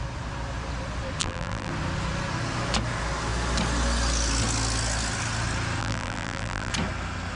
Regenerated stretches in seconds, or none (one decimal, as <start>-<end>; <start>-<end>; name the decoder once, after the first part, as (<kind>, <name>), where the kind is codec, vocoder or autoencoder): 1.2-1.7 (vocoder, BigVGAN v2); 5.8-6.7